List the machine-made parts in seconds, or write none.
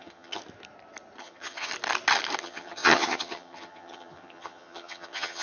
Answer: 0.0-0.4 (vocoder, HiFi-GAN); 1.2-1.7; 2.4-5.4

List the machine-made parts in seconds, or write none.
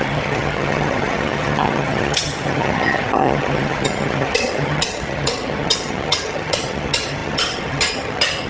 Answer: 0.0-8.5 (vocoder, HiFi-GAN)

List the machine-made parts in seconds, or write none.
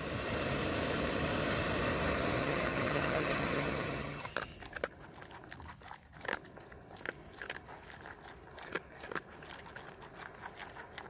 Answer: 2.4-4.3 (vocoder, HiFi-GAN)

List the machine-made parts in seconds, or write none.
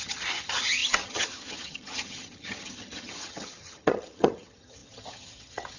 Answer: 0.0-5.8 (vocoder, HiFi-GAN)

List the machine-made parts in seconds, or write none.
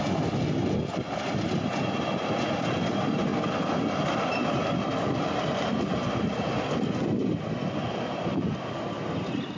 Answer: none